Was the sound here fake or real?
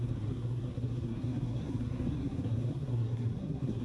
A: fake